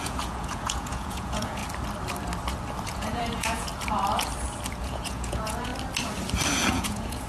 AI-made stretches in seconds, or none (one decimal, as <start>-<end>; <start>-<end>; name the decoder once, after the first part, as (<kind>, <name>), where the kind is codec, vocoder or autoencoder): 0.0-1.6 (vocoder, Vocos); 2.9-3.7; 4.8-5.7; 6.7-7.3

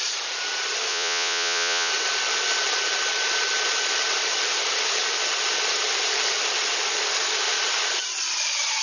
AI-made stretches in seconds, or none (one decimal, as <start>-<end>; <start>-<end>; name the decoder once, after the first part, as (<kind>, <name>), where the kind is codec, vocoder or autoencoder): 0.9-1.9 (vocoder, Vocos)

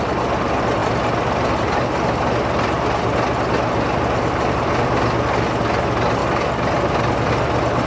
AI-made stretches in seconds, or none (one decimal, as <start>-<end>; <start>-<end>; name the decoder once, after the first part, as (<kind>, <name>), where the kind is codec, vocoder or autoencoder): none

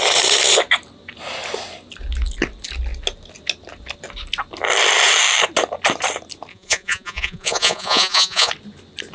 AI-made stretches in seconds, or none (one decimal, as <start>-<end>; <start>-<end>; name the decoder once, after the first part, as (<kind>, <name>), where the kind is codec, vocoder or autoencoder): 6.5-8.5 (vocoder, Vocos)